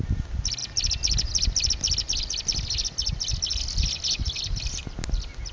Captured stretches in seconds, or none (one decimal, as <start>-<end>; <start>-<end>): 0.0-5.5